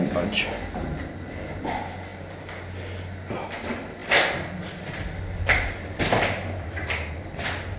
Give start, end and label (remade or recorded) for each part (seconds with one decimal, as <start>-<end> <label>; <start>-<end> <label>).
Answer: 0.0-7.8 recorded